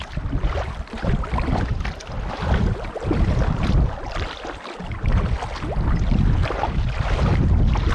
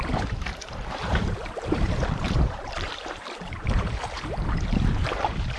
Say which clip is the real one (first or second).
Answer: first